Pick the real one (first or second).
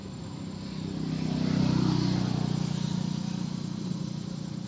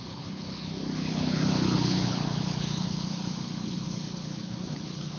first